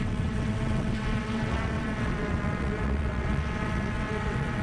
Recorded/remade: remade